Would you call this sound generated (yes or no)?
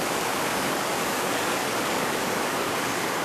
yes